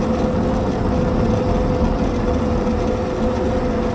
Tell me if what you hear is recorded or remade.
recorded